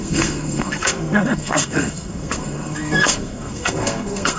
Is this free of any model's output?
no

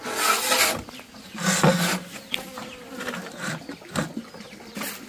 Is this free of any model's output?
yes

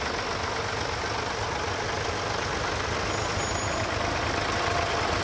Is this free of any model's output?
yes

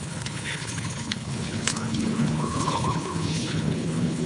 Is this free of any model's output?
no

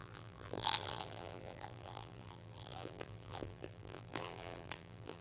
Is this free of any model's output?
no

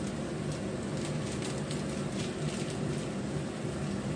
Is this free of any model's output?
yes